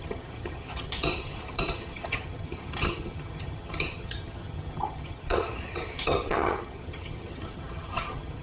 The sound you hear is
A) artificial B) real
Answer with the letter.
A